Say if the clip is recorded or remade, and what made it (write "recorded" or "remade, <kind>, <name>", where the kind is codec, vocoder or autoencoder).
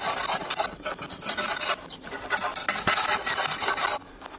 recorded